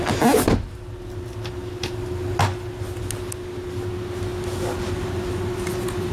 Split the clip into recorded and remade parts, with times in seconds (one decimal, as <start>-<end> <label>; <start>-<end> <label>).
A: 0.0-6.1 recorded